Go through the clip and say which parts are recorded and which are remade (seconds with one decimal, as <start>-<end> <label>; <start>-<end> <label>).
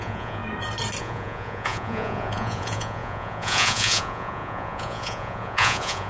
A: 0.0-0.4 remade; 0.4-1.0 recorded; 1.0-6.1 remade